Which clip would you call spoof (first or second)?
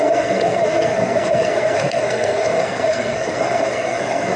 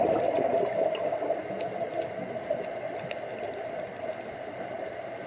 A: first